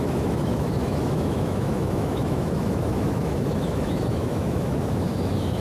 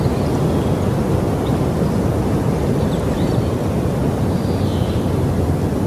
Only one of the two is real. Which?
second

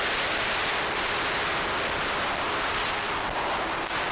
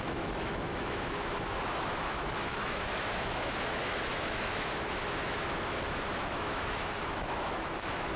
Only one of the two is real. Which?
first